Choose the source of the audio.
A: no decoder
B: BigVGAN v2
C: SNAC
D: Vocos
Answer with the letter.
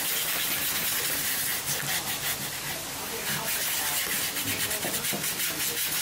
A